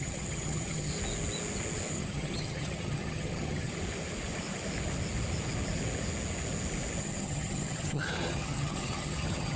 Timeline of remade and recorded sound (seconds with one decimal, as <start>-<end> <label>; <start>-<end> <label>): 0.0-0.9 remade; 0.9-1.9 recorded; 1.9-3.7 remade; 3.7-7.0 recorded; 7.0-9.6 remade